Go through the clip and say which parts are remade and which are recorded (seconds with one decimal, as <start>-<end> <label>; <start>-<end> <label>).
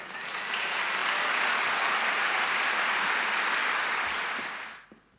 0.0-5.2 recorded